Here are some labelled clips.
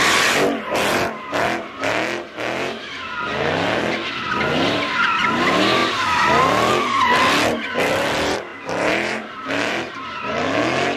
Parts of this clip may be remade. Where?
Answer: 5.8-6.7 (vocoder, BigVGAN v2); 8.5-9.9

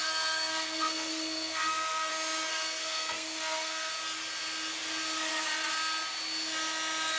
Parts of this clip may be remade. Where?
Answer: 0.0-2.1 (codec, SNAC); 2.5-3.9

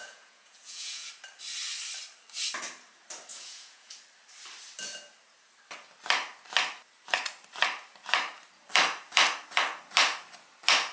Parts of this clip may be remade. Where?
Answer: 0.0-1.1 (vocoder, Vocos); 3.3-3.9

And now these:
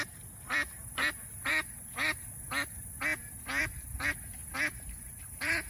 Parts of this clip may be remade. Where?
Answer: 0.0-1.5 (vocoder, BigVGAN v2); 3.2-5.7

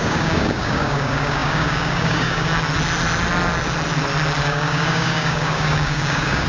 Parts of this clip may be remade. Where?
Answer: 0.0-2.5 (codec, DAC); 4.4-6.5